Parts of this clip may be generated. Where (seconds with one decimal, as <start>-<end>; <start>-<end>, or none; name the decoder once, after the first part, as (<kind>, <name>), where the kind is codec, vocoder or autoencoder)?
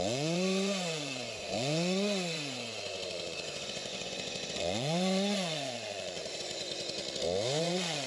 0.0-7.0 (vocoder, Vocos); 7.6-8.1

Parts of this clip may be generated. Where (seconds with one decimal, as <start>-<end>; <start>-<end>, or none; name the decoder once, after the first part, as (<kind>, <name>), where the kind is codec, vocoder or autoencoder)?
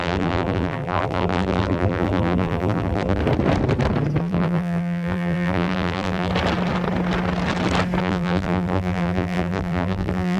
0.0-3.2 (vocoder, BigVGAN v2); 4.2-6.3; 8.0-10.4